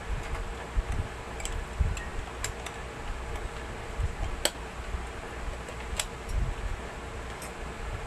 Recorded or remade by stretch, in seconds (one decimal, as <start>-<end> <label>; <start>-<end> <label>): 0.0-8.1 recorded